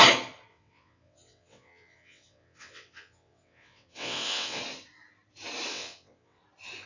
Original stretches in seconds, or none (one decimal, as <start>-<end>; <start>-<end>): 0.0-0.5; 4.6-5.7; 6.4-6.9